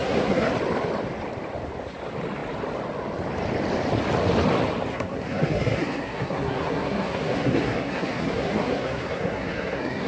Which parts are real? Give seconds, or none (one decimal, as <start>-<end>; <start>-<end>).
0.5-4.9